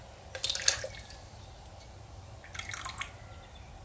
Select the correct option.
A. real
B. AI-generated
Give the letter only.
A